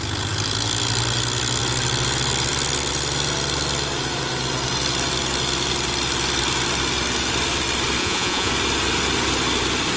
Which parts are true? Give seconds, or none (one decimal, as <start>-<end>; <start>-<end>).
0.0-8.0; 8.5-10.0

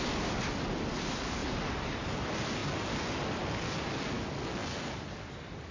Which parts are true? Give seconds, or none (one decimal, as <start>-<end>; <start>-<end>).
0.0-5.7

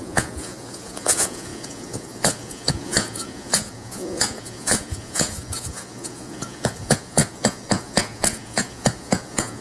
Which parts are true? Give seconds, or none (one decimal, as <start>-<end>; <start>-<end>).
none

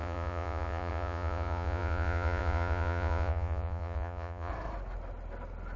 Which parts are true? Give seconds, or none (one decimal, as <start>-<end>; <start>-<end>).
4.5-5.8

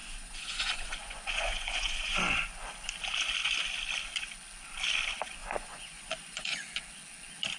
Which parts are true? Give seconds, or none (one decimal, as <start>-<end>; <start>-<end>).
2.5-5.4; 6.6-7.6

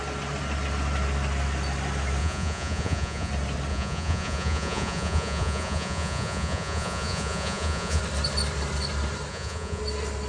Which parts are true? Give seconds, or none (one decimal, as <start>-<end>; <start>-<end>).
0.0-2.2; 3.3-3.7; 8.0-9.3; 9.8-10.3

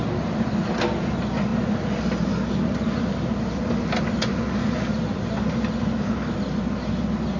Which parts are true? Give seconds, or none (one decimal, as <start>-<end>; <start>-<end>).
0.0-7.4